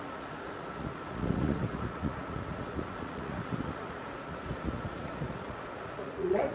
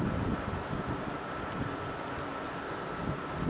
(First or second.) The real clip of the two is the second